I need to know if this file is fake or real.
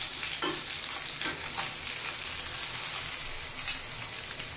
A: real